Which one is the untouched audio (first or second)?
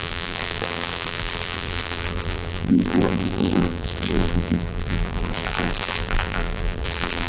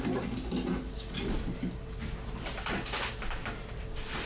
second